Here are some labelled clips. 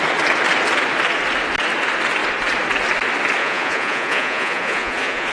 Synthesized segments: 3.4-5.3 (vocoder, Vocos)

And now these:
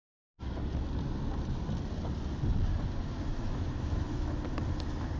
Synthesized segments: 3.3-4.4 (autoencoder, DAC-VAE)

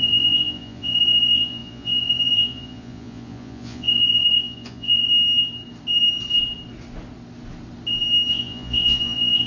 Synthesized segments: 0.0-5.1 (vocoder, Vocos); 8.3-9.5

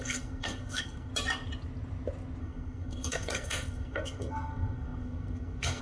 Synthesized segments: 0.0-1.1 (codec, SNAC); 2.4-5.8

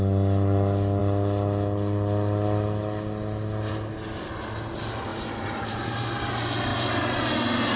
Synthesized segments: 5.1-6.3 (vocoder, BigVGAN v2); 6.7-7.3